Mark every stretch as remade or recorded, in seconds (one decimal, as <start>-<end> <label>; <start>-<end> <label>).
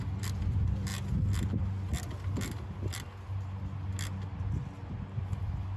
0.0-5.8 recorded